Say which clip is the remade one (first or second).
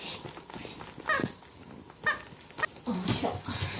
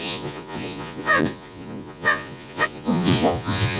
second